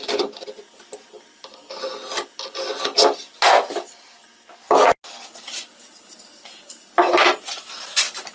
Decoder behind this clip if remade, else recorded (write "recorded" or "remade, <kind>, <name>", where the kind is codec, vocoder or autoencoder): recorded